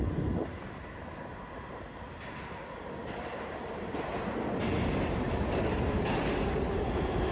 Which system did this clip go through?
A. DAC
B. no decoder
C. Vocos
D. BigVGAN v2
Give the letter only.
B